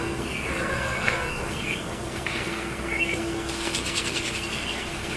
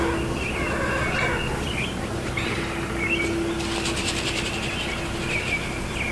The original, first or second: second